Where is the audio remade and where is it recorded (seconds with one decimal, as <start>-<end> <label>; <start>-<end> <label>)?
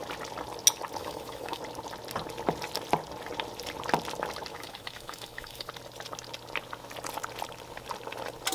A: 0.0-1.0 recorded; 1.0-1.6 remade; 1.6-4.5 recorded; 4.5-5.7 remade; 5.7-8.5 recorded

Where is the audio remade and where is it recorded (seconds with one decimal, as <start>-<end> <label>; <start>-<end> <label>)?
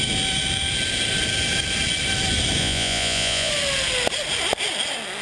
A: 0.0-2.6 recorded; 2.6-3.5 remade; 3.5-5.2 recorded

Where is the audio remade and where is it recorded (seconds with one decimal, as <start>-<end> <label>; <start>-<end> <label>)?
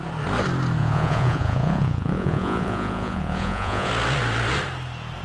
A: 0.0-0.8 recorded; 0.8-3.9 remade; 3.9-5.2 recorded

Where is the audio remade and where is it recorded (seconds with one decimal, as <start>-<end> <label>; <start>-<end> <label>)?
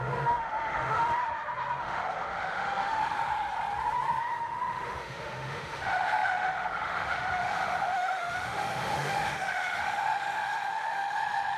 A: 0.0-1.2 remade; 1.2-1.8 recorded; 1.8-3.2 remade; 3.2-4.2 recorded; 4.2-11.6 remade